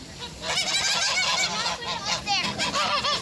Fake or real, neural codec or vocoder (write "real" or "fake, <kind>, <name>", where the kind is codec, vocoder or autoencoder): real